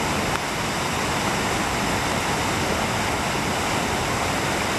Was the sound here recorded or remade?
recorded